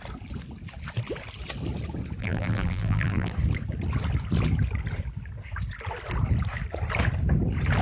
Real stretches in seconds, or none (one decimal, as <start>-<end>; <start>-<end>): 0.0-2.2; 3.3-7.8

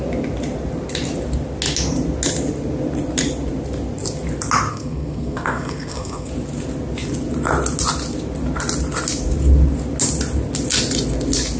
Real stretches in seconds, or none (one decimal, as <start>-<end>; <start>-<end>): 0.0-4.7; 6.3-11.6

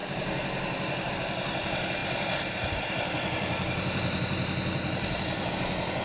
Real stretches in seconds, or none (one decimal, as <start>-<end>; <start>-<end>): 0.0-2.0; 5.5-6.0

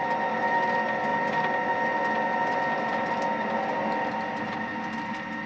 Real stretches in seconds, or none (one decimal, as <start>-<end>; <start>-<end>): 0.0-5.5

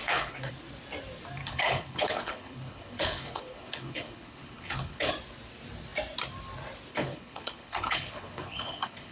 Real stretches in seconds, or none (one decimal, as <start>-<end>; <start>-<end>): 0.5-1.4; 5.1-6.9